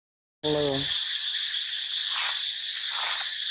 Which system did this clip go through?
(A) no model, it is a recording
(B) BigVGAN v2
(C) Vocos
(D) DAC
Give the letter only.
A